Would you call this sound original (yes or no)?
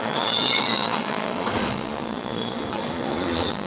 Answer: no